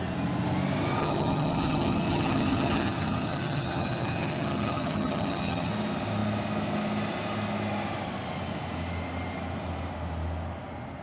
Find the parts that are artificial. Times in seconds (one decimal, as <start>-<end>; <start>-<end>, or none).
1.0-5.7